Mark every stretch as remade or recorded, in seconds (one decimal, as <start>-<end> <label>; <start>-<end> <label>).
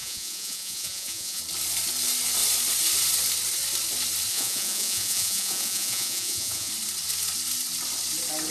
0.0-1.4 remade; 1.4-4.3 recorded; 4.3-6.7 remade; 6.7-8.5 recorded